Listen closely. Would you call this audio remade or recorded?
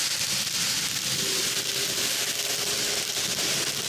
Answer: recorded